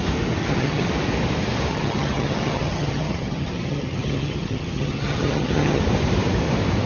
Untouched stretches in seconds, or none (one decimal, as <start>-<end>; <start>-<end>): 0.0-0.4; 0.9-1.7; 5.8-6.9

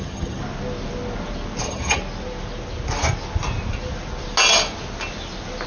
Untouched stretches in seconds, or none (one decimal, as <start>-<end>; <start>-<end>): 0.4-1.6; 2.0-5.7

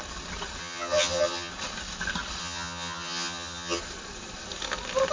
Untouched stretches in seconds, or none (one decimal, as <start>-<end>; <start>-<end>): 0.0-0.6; 1.5-2.4; 3.8-5.1

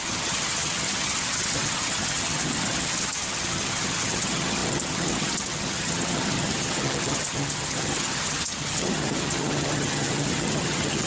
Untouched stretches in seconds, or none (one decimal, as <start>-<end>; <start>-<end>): none

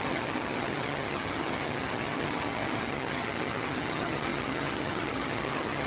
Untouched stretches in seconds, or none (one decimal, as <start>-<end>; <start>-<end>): none

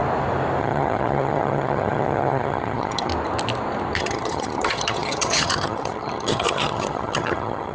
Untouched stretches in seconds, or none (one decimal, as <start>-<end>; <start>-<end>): 0.0-0.6; 3.1-4.0

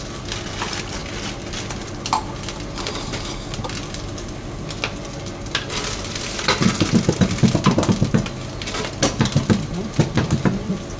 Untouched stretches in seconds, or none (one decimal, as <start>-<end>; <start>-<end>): 0.0-11.0